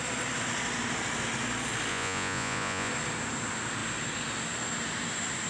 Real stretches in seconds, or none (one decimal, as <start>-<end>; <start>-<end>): 0.0-1.9; 2.9-5.5

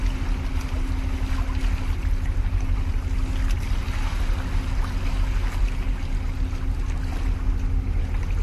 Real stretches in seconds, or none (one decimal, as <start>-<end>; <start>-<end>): 0.0-8.4

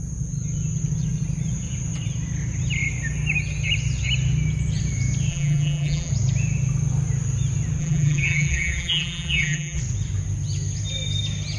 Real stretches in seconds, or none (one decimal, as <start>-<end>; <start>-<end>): 0.0-5.3; 6.1-7.8; 9.8-11.6